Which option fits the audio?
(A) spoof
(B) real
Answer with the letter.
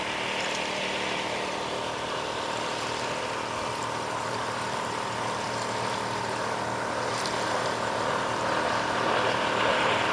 B